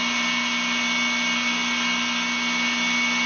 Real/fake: real